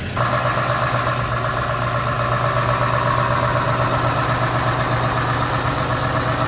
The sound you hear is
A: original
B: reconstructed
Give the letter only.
A